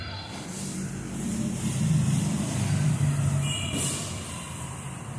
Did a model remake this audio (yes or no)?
yes